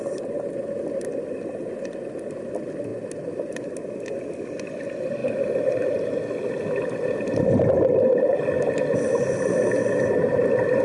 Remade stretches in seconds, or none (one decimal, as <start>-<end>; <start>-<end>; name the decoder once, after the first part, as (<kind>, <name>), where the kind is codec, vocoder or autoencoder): none